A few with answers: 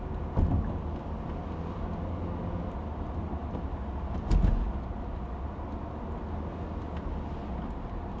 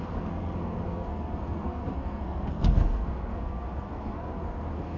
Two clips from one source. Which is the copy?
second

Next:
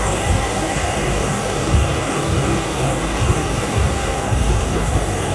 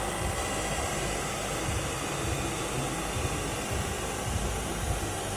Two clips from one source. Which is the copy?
first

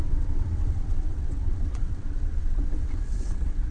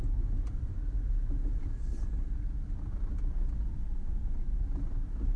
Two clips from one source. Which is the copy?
first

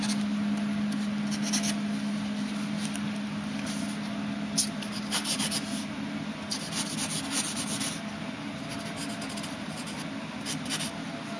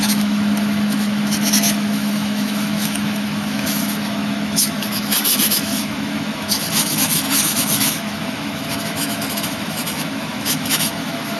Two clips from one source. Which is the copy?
second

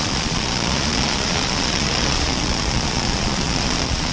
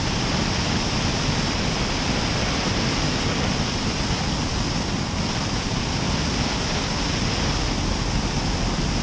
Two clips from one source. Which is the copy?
first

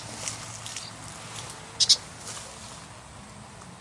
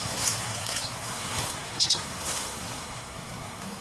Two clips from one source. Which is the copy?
second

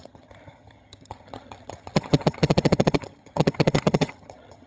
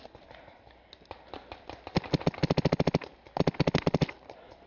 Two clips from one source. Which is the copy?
first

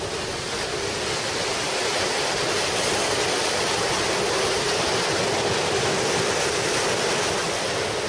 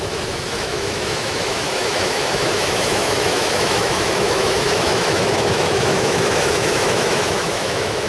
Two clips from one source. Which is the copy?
second